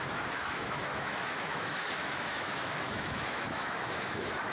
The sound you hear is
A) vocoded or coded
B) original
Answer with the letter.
A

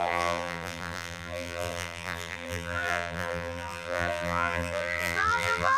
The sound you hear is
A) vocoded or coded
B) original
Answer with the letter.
A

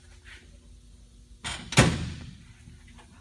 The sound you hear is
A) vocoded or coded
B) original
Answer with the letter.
B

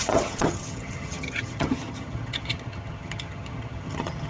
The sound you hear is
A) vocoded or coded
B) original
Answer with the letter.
A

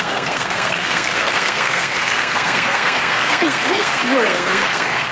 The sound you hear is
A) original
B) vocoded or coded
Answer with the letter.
B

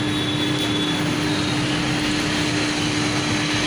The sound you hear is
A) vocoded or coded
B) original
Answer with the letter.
B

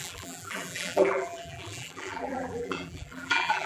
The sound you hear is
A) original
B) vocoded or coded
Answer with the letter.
B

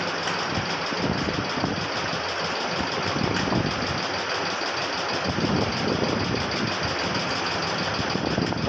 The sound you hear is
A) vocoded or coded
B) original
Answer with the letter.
B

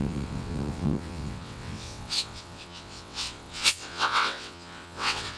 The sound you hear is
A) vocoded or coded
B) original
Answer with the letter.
A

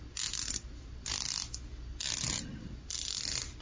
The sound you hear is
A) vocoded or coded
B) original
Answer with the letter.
B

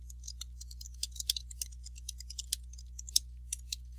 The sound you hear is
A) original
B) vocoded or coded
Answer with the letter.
A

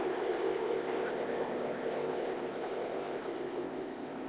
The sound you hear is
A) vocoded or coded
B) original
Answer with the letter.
A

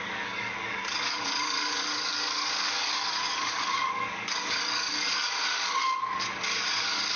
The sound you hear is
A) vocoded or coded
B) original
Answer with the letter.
A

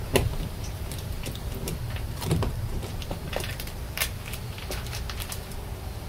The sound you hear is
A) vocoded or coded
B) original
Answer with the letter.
A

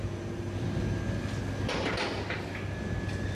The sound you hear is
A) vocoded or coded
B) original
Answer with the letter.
B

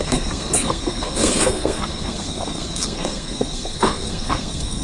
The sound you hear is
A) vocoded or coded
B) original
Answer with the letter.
A